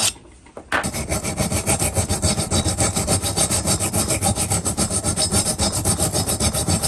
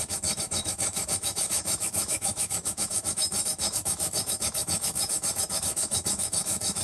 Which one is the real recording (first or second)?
first